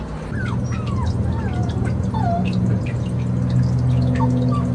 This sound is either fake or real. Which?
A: real